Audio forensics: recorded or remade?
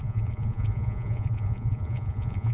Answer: remade